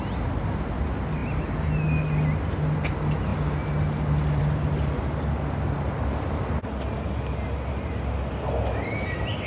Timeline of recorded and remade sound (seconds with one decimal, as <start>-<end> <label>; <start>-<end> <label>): 0.0-9.5 recorded